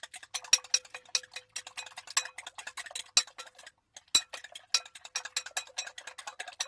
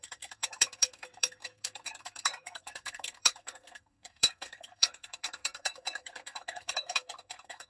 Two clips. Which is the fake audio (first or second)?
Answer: second